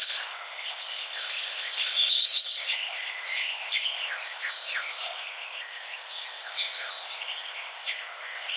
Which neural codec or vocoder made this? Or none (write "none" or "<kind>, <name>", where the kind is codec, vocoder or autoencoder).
codec, ZipCodec